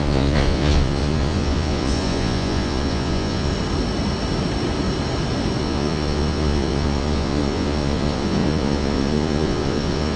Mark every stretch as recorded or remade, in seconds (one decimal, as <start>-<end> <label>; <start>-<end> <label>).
0.0-3.5 remade; 3.5-5.6 recorded; 5.6-10.2 remade